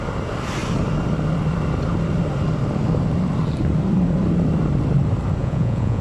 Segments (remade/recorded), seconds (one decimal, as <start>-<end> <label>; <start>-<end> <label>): 0.0-5.4 recorded; 5.4-6.0 remade